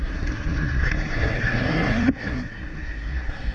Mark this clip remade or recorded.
remade